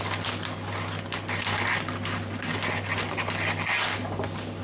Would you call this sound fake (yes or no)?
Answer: no